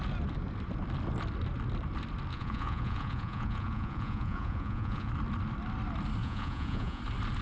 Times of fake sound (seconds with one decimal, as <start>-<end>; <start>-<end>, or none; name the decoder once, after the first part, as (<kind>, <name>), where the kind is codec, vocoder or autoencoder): 2.3-5.1 (vocoder, Vocos); 6.2-7.0